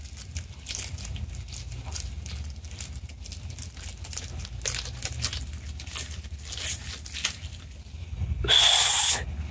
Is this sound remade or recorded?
recorded